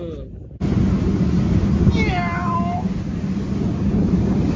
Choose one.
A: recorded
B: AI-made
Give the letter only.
A